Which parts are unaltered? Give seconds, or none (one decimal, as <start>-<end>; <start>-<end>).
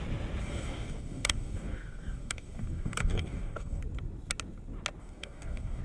0.0-0.4; 3.8-5.0